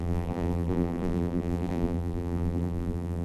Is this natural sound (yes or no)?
no